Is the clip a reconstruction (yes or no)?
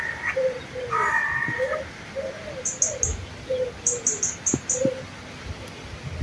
no